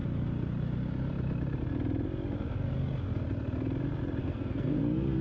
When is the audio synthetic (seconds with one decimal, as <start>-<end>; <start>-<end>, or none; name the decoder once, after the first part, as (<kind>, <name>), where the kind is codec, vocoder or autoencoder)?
4.2-4.8 (codec, SNAC)